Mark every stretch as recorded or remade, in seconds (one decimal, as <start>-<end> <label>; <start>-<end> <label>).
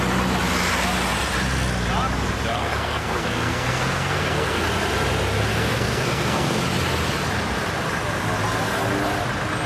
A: 0.0-2.5 recorded; 2.5-4.7 remade; 4.7-5.5 recorded; 5.5-6.6 remade; 6.6-9.7 recorded